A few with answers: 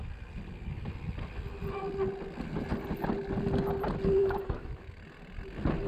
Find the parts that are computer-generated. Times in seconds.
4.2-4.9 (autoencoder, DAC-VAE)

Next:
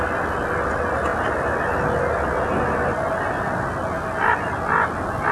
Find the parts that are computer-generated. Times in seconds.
none

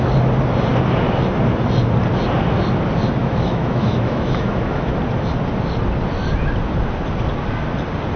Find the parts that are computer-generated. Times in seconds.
3.2-5.0 (autoencoder, DAC-VAE)

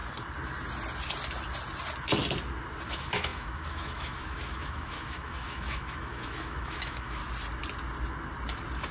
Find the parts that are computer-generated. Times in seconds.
2.9-7.2 (autoencoder, DAC-VAE)

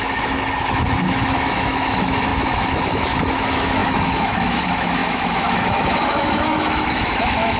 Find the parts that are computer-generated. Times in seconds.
0.0-7.6 (autoencoder, DAC-VAE)

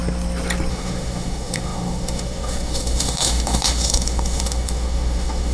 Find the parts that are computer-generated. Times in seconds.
0.7-5.5 (autoencoder, DAC-VAE)

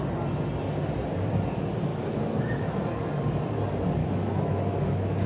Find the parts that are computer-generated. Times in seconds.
1.9-2.8 (autoencoder, DAC-VAE); 4.0-5.3

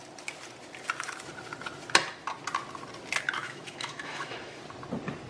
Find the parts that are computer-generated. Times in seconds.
3.4-4.6 (autoencoder, DAC-VAE)